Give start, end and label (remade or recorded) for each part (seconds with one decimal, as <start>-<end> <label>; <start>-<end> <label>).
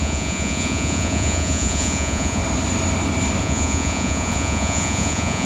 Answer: 0.0-2.4 remade; 2.4-3.4 recorded; 3.4-5.4 remade